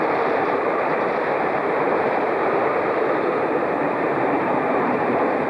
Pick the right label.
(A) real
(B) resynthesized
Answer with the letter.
B